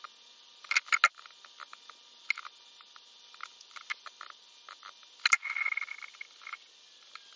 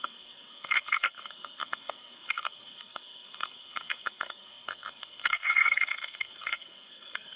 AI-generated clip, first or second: second